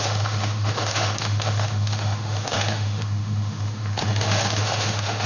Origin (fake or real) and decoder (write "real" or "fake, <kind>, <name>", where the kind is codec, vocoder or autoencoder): fake, autoencoder, DAC-VAE